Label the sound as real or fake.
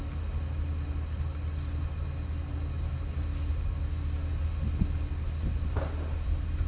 real